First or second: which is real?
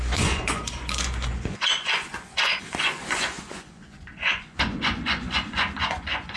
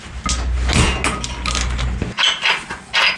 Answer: second